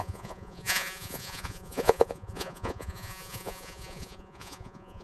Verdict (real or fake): fake